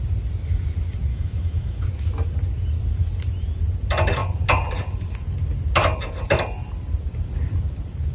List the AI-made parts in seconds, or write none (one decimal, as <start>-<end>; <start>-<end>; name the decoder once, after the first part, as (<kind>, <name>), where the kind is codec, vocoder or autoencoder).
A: 1.1-1.8 (autoencoder, DAC-VAE)

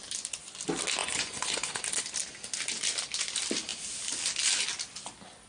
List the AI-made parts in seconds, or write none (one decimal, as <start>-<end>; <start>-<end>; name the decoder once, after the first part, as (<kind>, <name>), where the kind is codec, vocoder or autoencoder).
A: 1.0-1.8 (vocoder, Vocos)

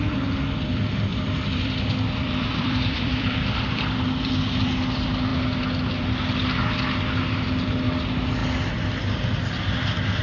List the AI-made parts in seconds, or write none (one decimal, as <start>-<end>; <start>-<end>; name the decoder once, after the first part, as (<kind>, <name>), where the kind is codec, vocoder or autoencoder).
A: 1.1-4.3 (vocoder, BigVGAN v2)